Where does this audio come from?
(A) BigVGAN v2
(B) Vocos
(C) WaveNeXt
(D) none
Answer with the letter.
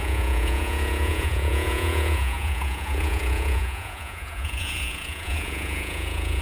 B